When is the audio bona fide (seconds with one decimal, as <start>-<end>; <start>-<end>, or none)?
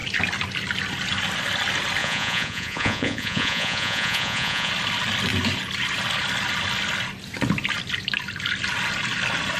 0.0-2.0; 4.7-9.6